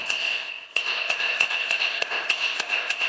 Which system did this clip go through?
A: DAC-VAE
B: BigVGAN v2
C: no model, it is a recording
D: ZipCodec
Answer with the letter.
D